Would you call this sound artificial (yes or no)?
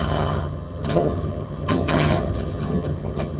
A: yes